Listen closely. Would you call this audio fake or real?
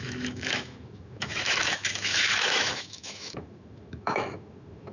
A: fake